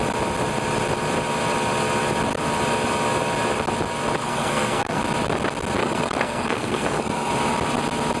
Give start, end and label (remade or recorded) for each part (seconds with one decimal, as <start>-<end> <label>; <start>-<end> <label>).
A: 0.0-4.2 recorded; 4.2-5.0 remade; 5.0-5.8 recorded; 5.8-7.3 remade; 7.3-8.2 recorded